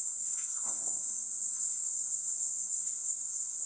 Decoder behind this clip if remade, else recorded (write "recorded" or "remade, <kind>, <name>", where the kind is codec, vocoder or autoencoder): remade, codec, SNAC